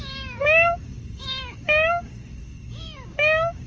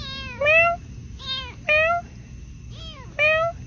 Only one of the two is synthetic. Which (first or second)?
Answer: first